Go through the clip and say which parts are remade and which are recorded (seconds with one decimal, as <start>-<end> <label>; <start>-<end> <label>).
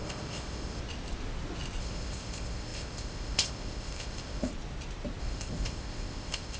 0.0-0.8 remade; 0.8-1.8 recorded; 1.8-4.5 remade; 4.5-5.2 recorded; 5.2-6.6 remade